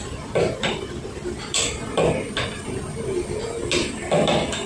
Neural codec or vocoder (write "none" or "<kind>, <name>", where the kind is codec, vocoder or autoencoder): none